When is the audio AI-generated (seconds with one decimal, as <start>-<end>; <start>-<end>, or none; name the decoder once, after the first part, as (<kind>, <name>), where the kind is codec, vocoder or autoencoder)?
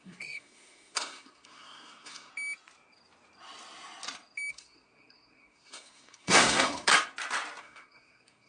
0.0-2.3 (codec, SNAC); 4.5-6.9; 7.6-8.5